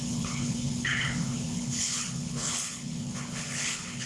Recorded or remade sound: remade